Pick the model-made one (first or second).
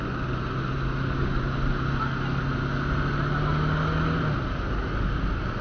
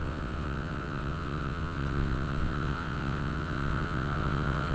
second